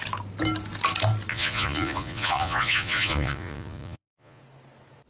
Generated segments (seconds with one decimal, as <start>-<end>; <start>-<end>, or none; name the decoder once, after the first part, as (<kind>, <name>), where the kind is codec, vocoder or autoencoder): 1.3-4.4 (vocoder, Vocos)

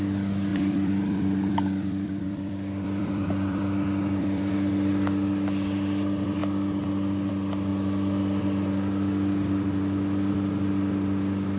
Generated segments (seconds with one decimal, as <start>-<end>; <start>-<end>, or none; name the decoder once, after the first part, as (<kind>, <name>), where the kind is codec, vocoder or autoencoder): 0.5-4.5 (vocoder, BigVGAN v2)

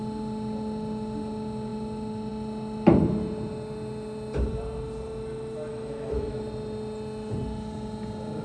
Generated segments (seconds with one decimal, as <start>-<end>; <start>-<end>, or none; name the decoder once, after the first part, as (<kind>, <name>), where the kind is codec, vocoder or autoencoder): 5.7-6.4 (autoencoder, DAC-VAE)

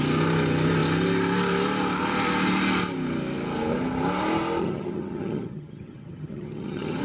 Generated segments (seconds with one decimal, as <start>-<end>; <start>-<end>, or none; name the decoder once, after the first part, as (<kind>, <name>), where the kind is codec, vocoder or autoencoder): 4.6-7.0 (vocoder, HiFi-GAN)